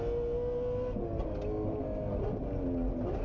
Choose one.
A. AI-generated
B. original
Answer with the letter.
B